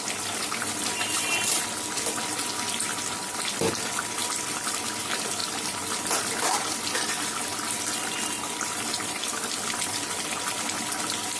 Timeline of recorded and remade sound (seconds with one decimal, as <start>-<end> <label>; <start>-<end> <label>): 0.0-0.4 recorded; 0.4-1.2 remade; 1.2-5.4 recorded; 5.4-7.3 remade; 7.3-11.4 recorded

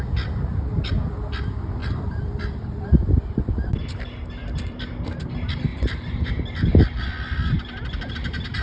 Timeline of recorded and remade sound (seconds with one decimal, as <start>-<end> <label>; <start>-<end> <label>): 0.0-1.8 recorded; 1.8-5.3 remade; 5.3-5.7 recorded; 5.7-8.1 remade; 8.1-8.6 recorded

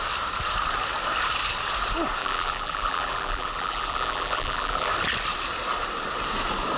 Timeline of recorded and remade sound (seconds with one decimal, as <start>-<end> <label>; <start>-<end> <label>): 0.0-2.2 recorded; 2.2-4.9 remade; 4.9-6.8 recorded